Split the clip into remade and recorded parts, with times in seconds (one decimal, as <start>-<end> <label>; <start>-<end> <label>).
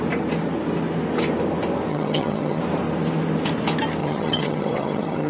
0.0-1.9 recorded; 1.9-2.6 remade; 2.6-4.0 recorded; 4.0-5.3 remade